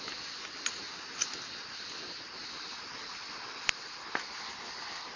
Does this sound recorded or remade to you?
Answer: recorded